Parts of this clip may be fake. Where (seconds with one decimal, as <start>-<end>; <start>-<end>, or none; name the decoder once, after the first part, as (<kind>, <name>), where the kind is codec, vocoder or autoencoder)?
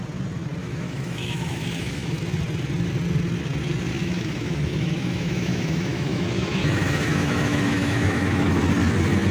0.6-2.2 (autoencoder, DAC-VAE); 4.0-8.6